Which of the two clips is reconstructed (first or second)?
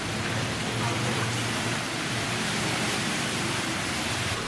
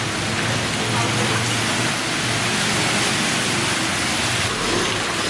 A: first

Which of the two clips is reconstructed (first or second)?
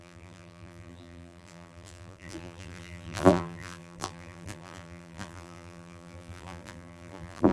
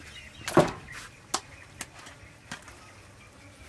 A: first